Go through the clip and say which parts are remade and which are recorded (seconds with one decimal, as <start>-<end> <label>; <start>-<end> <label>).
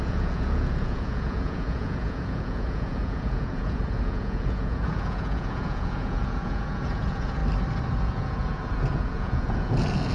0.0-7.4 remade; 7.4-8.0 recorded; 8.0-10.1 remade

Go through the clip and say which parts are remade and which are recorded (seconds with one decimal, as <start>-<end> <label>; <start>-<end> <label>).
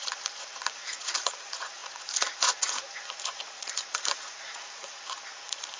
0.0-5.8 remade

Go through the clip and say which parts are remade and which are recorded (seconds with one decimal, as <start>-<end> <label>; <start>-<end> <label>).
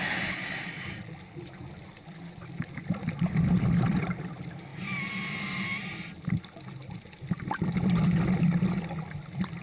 0.0-9.6 recorded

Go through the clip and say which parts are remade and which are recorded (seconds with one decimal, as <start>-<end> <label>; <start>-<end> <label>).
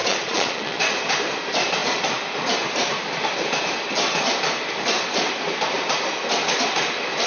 0.0-0.8 remade; 0.8-7.3 recorded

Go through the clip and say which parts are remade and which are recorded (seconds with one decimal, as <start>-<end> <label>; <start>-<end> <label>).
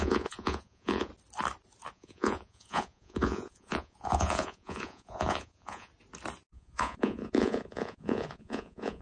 0.0-1.1 remade; 1.1-1.9 recorded; 1.9-5.9 remade; 5.9-6.5 recorded; 6.5-9.0 remade